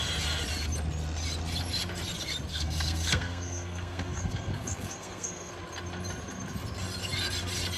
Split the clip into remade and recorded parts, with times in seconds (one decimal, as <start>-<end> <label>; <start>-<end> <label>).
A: 0.0-2.5 recorded; 2.5-5.5 remade; 5.5-7.8 recorded